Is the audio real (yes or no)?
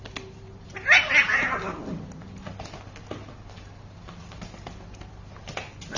yes